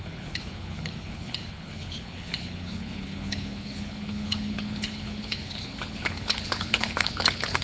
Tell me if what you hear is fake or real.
fake